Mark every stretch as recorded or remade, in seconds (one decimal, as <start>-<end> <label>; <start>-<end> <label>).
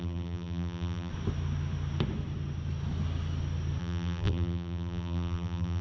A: 0.0-1.1 remade; 1.1-3.8 recorded; 3.8-5.8 remade